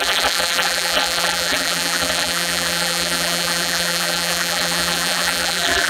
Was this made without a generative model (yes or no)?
no